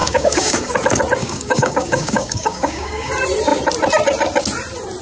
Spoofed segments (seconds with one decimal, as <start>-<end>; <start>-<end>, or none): 0.0-0.7; 1.2-3.1